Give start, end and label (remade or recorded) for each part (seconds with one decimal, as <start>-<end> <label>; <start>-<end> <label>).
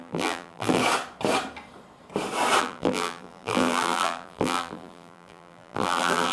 0.0-0.8 remade; 0.8-2.6 recorded; 2.6-6.3 remade